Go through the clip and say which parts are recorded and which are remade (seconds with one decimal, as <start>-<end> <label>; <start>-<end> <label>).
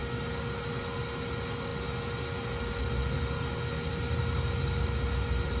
0.0-5.6 recorded